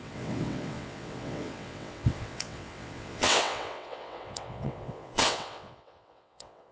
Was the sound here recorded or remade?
remade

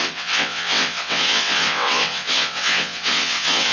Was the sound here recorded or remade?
remade